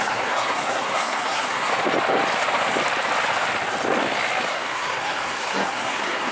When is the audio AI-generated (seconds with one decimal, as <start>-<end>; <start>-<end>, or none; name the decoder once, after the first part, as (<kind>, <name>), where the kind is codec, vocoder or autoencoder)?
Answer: 0.0-1.7 (codec, SNAC); 4.5-6.3